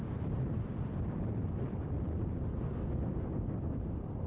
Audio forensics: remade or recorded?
recorded